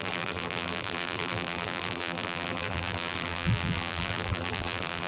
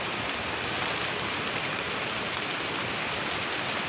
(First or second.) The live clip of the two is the second